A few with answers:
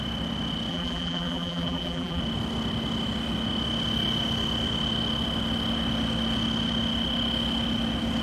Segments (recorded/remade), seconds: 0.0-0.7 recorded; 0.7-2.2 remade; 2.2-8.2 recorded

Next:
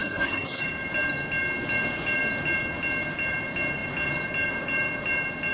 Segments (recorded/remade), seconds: 0.0-0.6 remade; 0.6-5.5 recorded

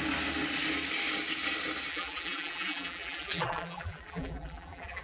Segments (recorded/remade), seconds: 0.0-1.9 recorded; 1.9-5.0 remade

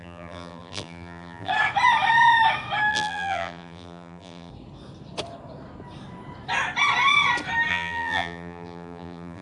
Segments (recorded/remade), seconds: 0.0-1.5 remade; 1.5-2.9 recorded; 2.9-4.5 remade; 4.5-7.7 recorded; 7.7-9.4 remade